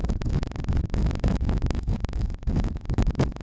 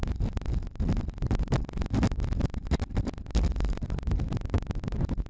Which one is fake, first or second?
first